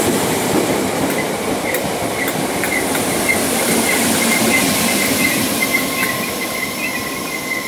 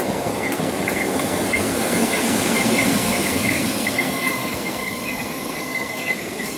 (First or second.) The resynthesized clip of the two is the second